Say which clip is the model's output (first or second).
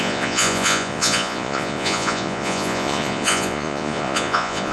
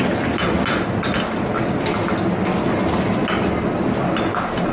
first